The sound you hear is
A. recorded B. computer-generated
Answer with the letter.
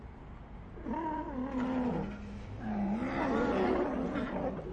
A